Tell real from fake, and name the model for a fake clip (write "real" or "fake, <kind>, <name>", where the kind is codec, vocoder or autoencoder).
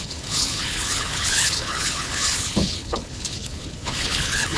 fake, codec, HILCodec